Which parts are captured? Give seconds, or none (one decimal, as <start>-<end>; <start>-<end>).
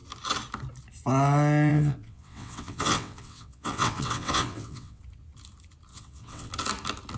0.0-1.7; 5.0-5.9; 6.5-7.2